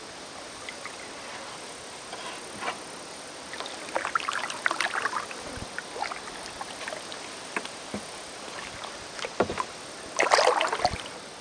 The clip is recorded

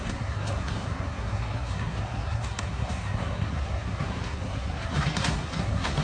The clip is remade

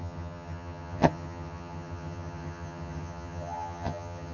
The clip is remade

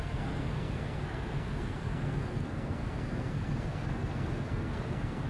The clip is remade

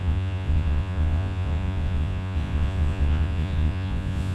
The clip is remade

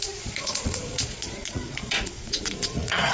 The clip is remade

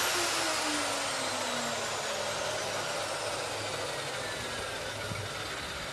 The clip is recorded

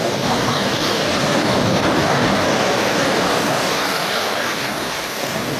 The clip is remade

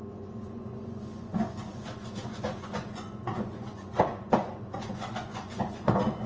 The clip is remade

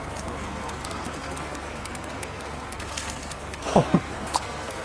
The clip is remade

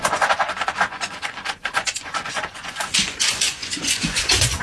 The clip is remade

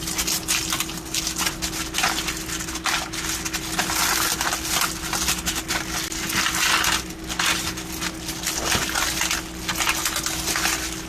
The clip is recorded